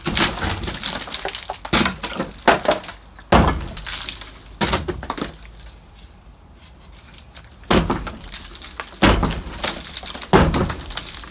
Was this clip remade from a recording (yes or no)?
no